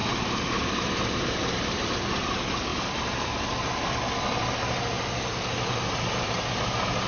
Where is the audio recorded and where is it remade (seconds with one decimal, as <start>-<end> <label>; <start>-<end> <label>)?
0.0-2.3 remade; 2.3-2.7 recorded; 2.7-3.6 remade; 3.6-7.1 recorded